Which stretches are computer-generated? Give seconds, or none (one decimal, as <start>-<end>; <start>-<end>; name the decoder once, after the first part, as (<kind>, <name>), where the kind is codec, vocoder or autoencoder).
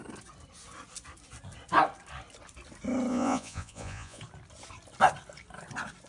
3.1-4.2 (vocoder, Vocos)